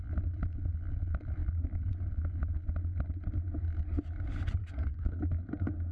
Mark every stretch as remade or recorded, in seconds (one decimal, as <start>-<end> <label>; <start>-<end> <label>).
0.0-4.6 recorded; 4.6-5.2 remade; 5.2-5.9 recorded